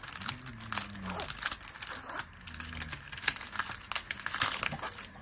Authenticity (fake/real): real